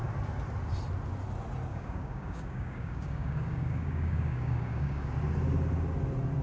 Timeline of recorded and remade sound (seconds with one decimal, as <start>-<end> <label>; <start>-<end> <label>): 0.0-1.7 recorded; 1.7-5.1 remade; 5.1-6.4 recorded